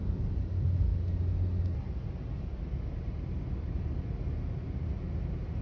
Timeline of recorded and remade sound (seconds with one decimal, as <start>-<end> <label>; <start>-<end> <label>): 0.0-5.6 recorded